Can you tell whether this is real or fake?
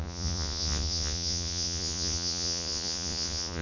fake